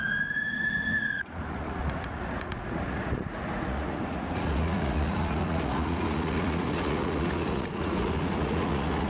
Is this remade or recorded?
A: remade